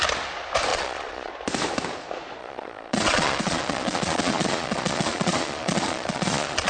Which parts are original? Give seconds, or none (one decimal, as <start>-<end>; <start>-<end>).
0.0-0.7; 1.3-2.4